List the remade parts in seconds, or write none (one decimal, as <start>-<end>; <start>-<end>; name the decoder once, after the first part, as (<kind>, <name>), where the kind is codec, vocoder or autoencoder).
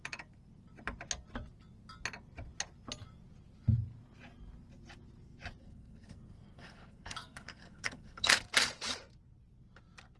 5.6-8.3 (codec, SNAC)